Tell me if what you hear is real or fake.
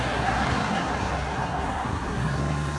fake